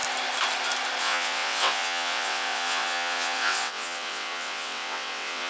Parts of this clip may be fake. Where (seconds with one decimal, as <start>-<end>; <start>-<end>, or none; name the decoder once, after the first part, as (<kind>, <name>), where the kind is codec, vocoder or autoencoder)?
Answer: 1.0-5.5 (vocoder, WaveNeXt)